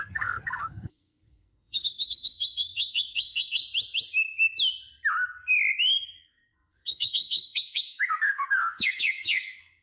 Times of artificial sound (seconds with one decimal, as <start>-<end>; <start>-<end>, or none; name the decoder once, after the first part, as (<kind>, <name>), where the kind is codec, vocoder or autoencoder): 0.0-3.6 (codec, SNAC); 6.2-9.8